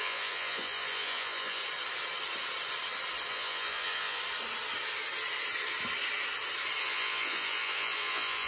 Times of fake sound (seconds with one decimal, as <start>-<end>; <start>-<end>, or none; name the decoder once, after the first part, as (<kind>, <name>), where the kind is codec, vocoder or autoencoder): 0.0-1.6 (vocoder, Vocos); 3.3-4.2; 6.8-8.5